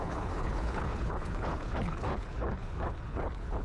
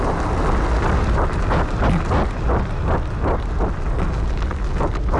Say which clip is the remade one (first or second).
first